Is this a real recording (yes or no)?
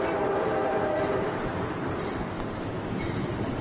no